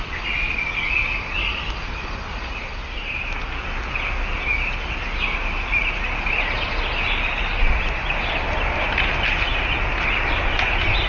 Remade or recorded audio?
recorded